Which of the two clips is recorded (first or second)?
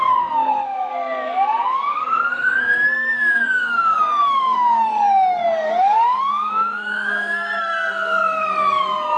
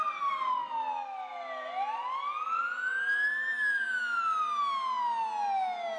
second